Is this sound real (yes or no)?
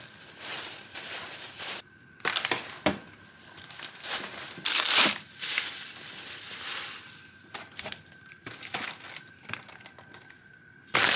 no